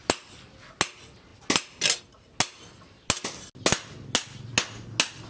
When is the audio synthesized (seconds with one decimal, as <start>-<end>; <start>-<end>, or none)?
none